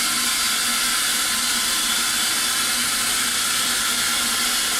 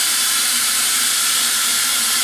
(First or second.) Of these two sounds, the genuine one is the first